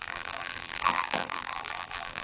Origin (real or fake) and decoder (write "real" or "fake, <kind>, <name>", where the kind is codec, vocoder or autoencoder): fake, vocoder, BigVGAN v2